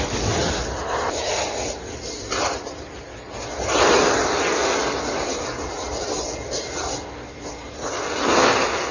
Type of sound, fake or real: real